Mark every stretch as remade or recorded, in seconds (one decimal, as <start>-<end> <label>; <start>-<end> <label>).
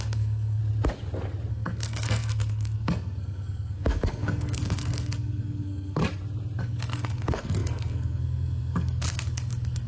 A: 0.0-0.6 remade; 0.6-1.5 recorded; 1.5-6.0 remade; 6.0-6.6 recorded; 6.6-9.9 remade